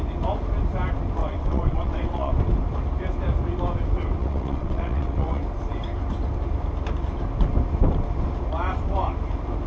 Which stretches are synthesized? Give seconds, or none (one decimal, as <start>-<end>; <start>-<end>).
1.2-2.3; 4.2-5.4